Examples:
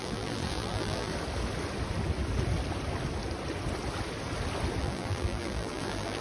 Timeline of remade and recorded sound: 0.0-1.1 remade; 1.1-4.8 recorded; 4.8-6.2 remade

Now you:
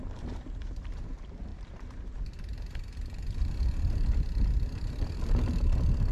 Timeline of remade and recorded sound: 0.0-1.5 recorded; 1.5-5.2 remade; 5.2-6.1 recorded

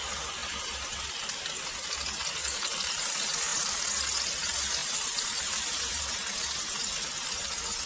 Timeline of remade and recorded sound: 0.0-0.4 recorded; 0.4-1.4 remade; 1.4-2.4 recorded; 2.4-3.1 remade; 3.1-4.8 recorded; 4.8-6.9 remade; 6.9-7.9 recorded

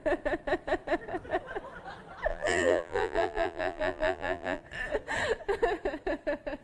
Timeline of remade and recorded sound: 0.0-2.3 recorded; 2.3-4.6 remade; 4.6-6.6 recorded

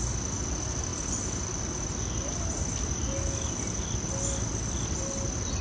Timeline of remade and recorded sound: 0.0-5.6 recorded